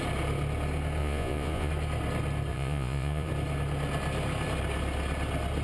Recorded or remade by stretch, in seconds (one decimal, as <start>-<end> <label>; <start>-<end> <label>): 0.0-1.0 recorded; 1.0-1.7 remade; 1.7-2.5 recorded; 2.5-3.3 remade; 3.3-5.6 recorded

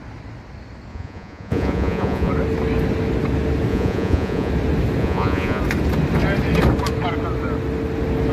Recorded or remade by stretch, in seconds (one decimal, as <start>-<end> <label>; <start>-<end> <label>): 0.0-0.9 recorded; 0.9-2.3 remade; 2.3-3.7 recorded; 3.7-4.5 remade; 4.5-5.0 recorded; 5.0-5.6 remade; 5.6-8.3 recorded

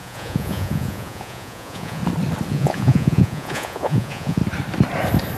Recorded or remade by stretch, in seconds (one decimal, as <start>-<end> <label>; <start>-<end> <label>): 0.0-2.0 remade; 2.0-2.5 recorded; 2.5-4.4 remade; 4.4-5.4 recorded